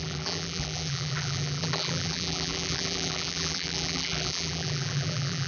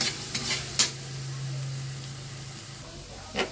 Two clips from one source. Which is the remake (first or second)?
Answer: first